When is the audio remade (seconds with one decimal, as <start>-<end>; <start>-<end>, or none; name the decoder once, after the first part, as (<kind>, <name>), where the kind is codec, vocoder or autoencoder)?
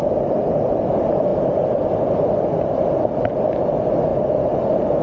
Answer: none